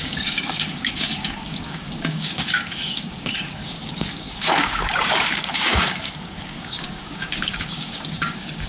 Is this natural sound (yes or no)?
no